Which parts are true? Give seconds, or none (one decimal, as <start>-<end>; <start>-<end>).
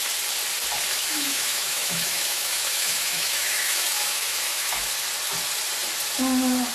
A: 0.0-0.9; 4.9-6.7